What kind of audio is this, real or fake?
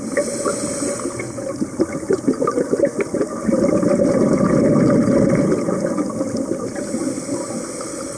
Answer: real